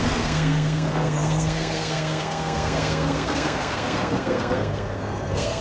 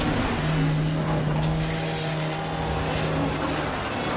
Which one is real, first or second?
second